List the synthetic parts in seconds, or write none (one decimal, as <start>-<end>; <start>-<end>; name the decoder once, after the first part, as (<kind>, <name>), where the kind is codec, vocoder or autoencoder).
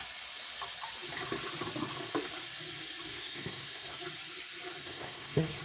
3.1-4.0 (codec, SNAC); 4.8-5.6